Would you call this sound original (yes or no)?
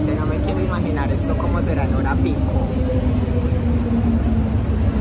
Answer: yes